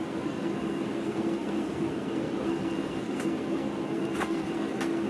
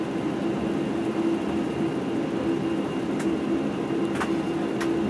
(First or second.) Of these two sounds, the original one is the second